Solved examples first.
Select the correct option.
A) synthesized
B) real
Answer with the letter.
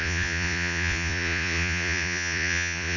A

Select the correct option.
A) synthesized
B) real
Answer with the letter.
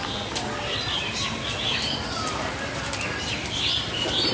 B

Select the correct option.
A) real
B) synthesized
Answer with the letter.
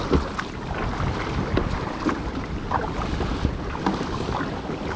A